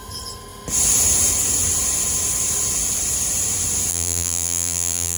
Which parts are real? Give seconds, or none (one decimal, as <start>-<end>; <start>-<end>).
0.0-3.9